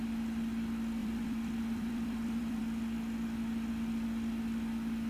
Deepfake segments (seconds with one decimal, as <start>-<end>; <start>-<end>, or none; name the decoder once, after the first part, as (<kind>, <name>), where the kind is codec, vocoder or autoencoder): 1.0-2.6 (vocoder, BigVGAN v2)